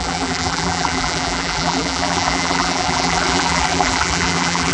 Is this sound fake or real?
fake